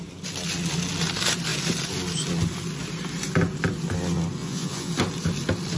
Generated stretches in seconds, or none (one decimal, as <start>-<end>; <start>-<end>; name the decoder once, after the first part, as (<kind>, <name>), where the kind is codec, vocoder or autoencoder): 4.4-4.9 (vocoder, Vocos)

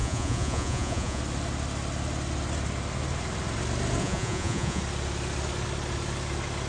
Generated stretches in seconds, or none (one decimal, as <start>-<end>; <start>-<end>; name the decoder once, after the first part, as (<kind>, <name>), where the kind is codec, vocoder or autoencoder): 0.0-1.2 (vocoder, Vocos); 4.0-4.8